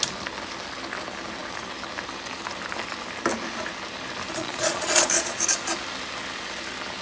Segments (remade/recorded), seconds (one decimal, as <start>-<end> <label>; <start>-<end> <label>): 0.0-4.4 recorded; 4.4-5.4 remade; 5.4-7.0 recorded